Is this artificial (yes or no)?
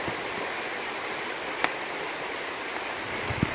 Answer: no